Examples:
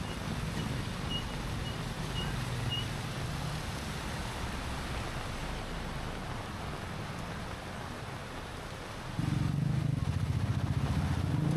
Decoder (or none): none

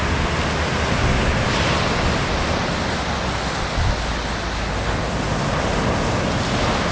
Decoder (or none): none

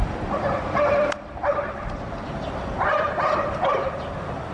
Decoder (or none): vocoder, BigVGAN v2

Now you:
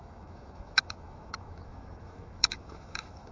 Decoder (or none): autoencoder, DAC-VAE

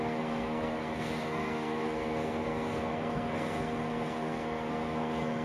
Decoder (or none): codec, SNAC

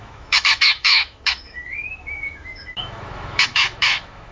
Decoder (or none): autoencoder, DAC-VAE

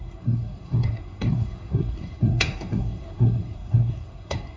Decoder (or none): codec, SNAC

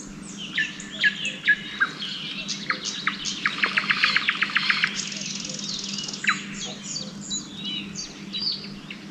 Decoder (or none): none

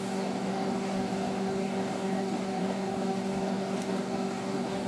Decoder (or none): codec, DAC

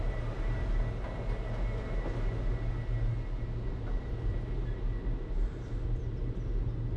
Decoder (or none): none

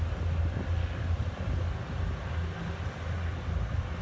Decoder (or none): none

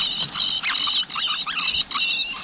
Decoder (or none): none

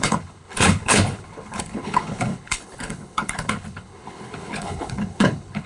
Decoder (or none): codec, HILCodec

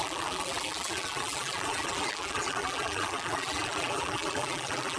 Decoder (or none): vocoder, BigVGAN v2